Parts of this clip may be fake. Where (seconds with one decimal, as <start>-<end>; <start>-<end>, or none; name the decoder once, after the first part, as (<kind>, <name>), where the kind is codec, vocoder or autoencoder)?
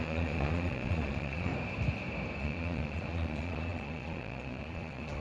0.0-1.5 (vocoder, Vocos); 2.4-5.2